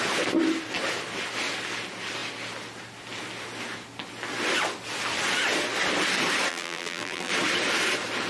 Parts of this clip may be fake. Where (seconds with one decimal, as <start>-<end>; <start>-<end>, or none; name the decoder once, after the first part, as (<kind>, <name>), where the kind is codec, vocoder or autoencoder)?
6.5-7.3 (vocoder, BigVGAN v2)